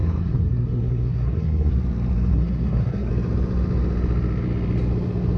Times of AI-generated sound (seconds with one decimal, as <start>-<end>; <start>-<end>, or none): 0.0-1.7; 2.3-3.1